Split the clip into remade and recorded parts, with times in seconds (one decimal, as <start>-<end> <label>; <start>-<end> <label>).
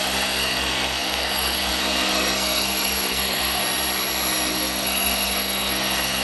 0.0-3.6 remade; 3.6-4.5 recorded; 4.5-6.2 remade